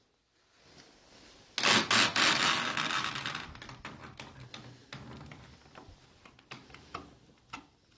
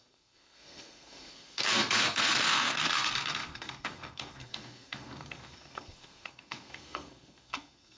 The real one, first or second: first